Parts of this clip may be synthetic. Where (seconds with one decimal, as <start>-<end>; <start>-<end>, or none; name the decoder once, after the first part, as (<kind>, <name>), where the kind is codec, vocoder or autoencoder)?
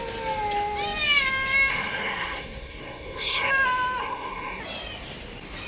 1.7-3.5 (codec, SNAC); 4.0-4.6